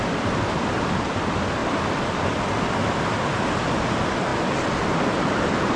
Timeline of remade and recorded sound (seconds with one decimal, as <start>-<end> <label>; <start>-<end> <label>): 0.0-5.8 recorded